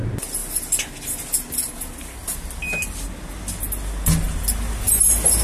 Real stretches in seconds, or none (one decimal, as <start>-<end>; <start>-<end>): 0.0-5.4